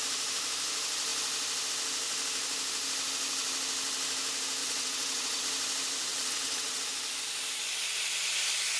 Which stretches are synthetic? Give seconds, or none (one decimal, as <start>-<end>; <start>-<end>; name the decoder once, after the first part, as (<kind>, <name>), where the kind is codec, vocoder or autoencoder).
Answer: 4.6-5.4 (vocoder, WaveNeXt); 6.1-6.8